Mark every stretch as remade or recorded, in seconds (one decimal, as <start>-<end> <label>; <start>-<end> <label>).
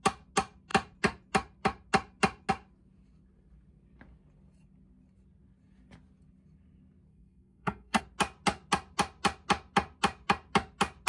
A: 0.0-7.1 recorded; 7.1-8.0 remade; 8.0-11.1 recorded